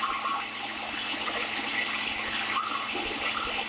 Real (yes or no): yes